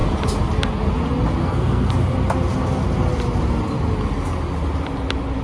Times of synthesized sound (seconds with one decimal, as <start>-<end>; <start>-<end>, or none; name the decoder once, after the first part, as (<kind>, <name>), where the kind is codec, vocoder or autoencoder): 1.4-1.9 (codec, SNAC)